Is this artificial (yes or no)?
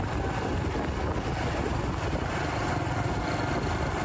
no